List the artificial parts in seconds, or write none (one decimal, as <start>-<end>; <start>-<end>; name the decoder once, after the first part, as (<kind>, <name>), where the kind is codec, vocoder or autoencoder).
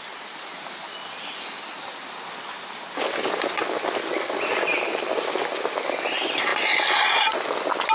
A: none